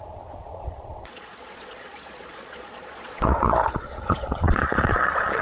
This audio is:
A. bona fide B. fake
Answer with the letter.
B